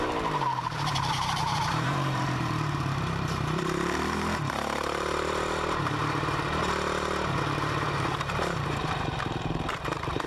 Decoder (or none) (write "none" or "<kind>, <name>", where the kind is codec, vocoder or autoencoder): vocoder, BigVGAN v2